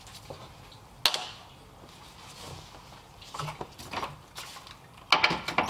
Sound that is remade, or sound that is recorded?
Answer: recorded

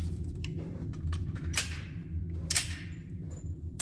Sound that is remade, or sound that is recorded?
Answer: remade